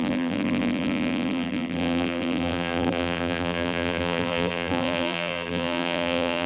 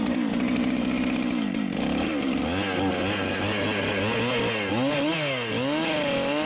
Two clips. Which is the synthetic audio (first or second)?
first